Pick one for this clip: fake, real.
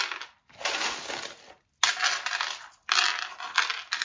real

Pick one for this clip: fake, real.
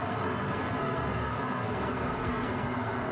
fake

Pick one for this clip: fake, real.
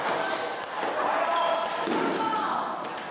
real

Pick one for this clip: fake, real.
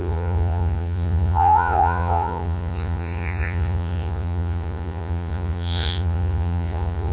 fake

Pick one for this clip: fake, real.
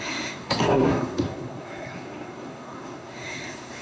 fake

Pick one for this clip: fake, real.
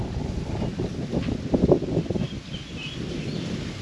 real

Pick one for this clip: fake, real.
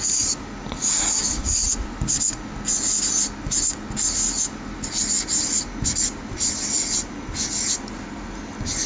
real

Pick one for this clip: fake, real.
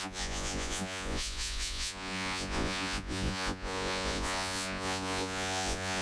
fake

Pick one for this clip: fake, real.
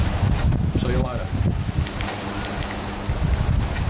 real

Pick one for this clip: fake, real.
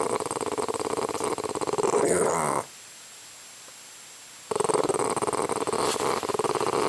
real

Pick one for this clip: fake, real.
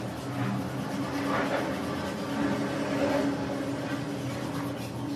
real